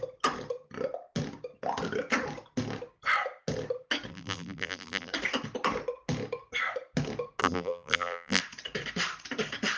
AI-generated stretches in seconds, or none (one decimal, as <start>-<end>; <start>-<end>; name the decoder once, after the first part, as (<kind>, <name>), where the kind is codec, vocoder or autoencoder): 4.1-5.1 (vocoder, BigVGAN v2); 7.4-8.4